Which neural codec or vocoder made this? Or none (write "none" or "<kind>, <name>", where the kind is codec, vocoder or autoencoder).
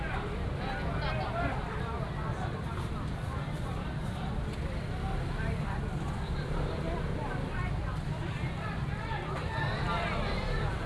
vocoder, BigVGAN v2